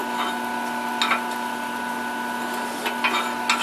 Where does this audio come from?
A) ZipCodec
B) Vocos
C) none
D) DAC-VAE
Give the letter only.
C